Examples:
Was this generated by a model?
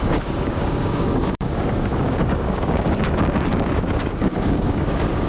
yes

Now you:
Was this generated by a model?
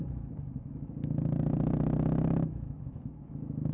yes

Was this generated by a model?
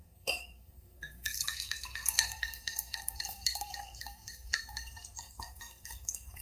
yes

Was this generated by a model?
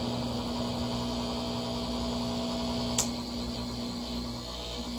no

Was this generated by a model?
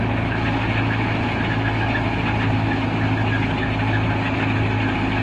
no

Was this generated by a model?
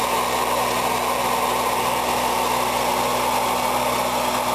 no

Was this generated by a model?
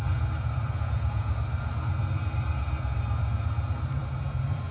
yes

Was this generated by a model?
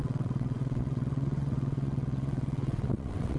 yes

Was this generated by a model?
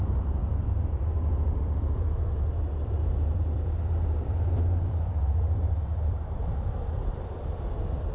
yes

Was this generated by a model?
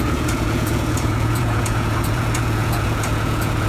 yes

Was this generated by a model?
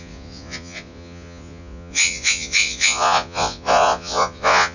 yes